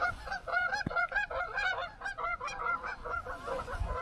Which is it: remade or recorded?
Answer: remade